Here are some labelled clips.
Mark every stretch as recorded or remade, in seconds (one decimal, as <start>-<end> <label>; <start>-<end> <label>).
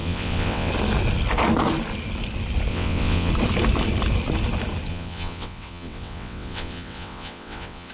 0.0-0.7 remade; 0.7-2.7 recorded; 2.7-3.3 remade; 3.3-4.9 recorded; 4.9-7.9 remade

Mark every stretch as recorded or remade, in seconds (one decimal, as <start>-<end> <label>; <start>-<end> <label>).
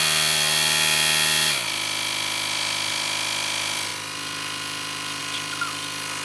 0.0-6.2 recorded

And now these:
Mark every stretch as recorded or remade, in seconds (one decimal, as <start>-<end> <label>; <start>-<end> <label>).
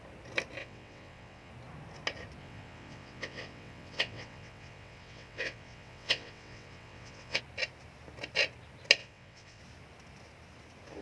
0.0-0.6 recorded; 0.6-1.5 remade; 1.5-2.4 recorded; 2.4-7.4 remade; 7.4-9.0 recorded; 9.0-9.6 remade; 9.6-11.0 recorded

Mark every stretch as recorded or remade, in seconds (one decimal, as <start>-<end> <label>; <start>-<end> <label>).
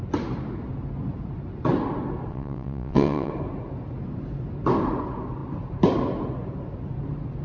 0.0-2.3 recorded; 2.3-3.3 remade; 3.3-7.4 recorded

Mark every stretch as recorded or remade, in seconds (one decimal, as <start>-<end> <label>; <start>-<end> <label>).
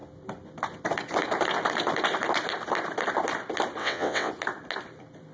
0.0-3.8 recorded; 3.8-4.3 remade; 4.3-5.3 recorded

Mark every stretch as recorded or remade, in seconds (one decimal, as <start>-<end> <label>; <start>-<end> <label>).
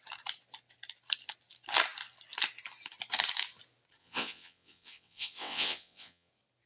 0.0-4.0 recorded; 4.0-6.3 remade; 6.3-6.7 recorded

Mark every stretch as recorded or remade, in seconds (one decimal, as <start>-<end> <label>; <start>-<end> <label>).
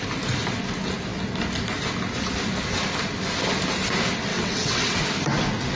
0.0-4.3 recorded; 4.3-5.0 remade; 5.0-5.8 recorded